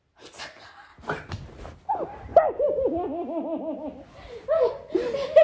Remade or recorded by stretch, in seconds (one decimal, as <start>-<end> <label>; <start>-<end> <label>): 0.0-0.9 recorded; 0.9-1.9 remade; 1.9-5.4 recorded